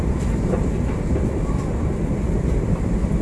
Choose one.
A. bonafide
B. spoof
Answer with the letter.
B